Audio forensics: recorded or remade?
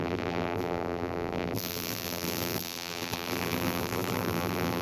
remade